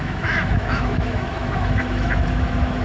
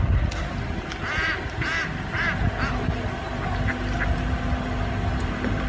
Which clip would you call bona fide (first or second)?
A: second